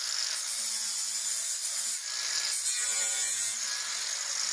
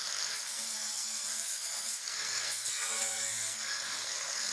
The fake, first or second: second